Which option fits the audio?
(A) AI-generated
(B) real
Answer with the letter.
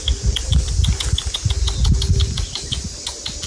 B